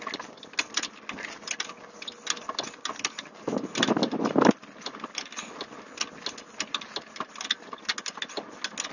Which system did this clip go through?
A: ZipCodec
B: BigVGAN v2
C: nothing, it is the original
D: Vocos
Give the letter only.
C